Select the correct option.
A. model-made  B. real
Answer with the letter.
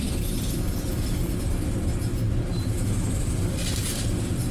B